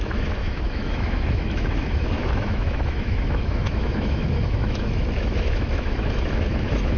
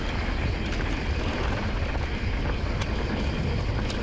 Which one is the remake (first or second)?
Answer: first